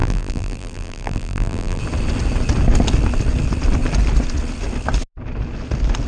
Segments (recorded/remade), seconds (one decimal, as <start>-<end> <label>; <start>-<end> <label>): 0.0-1.8 remade; 1.8-6.1 recorded